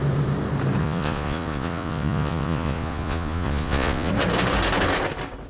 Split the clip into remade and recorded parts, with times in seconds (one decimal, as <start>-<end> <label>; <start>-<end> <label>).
0.0-0.8 recorded; 0.8-4.1 remade; 4.1-5.5 recorded